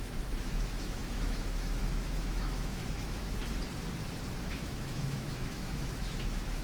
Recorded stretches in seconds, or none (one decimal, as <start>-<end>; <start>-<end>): 3.4-4.5